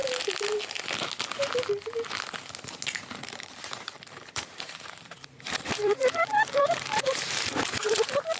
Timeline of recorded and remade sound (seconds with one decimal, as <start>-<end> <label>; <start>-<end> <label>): 0.0-3.1 recorded; 3.1-8.4 remade